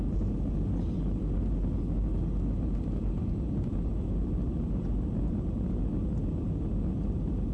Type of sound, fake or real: real